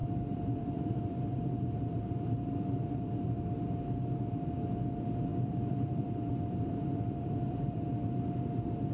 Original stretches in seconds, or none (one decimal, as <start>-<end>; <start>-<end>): 3.5-5.3; 7.8-8.9